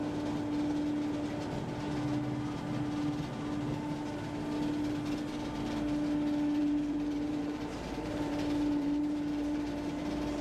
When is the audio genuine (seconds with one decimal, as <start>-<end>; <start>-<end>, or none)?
0.0-6.6; 10.0-10.4